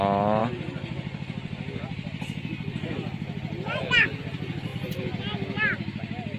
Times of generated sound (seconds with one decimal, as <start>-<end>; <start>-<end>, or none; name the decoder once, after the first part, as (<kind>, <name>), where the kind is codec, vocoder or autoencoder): none